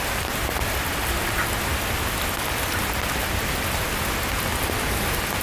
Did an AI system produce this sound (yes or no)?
no